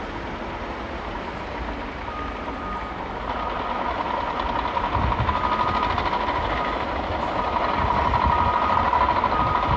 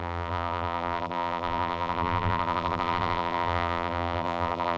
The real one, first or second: first